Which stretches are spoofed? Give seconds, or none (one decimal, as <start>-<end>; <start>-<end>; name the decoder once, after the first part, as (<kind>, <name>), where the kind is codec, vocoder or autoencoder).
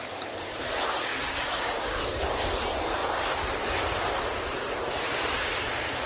1.1-2.0 (codec, DAC)